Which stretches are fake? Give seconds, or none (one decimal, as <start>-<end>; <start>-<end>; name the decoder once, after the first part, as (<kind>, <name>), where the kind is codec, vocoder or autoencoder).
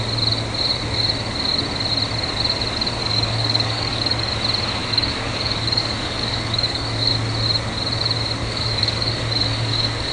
3.0-4.3 (codec, DAC); 4.8-7.1; 8.4-10.1